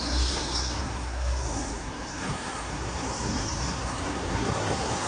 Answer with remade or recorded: remade